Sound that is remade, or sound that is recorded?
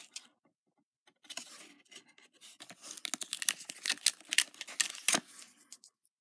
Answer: recorded